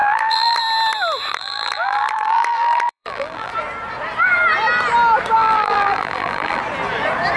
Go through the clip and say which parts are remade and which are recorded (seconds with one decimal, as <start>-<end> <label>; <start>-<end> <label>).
0.0-0.6 remade; 0.6-1.3 recorded; 1.3-3.5 remade; 3.5-5.4 recorded; 5.4-6.6 remade; 6.6-7.4 recorded